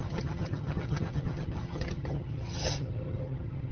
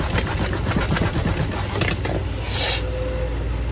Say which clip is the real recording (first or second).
second